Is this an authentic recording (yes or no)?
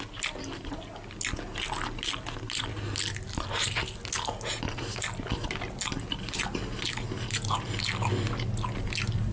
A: yes